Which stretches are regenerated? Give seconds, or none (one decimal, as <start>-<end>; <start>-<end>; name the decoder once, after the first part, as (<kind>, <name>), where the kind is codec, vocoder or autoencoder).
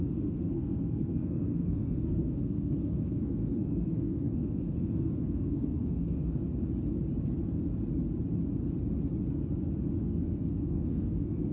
0.0-6.4 (codec, SNAC); 10.0-11.5